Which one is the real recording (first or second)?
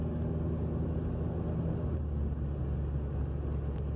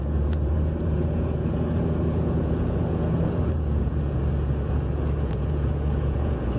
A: first